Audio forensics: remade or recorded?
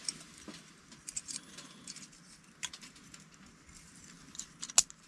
recorded